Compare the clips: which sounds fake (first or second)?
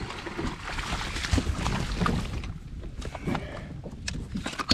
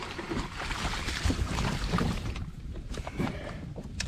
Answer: second